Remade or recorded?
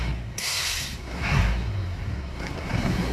remade